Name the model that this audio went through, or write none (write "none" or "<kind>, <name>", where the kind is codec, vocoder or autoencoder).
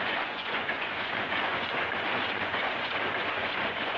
vocoder, Vocos